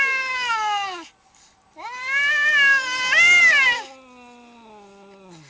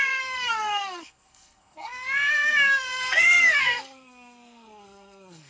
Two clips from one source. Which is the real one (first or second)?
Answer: first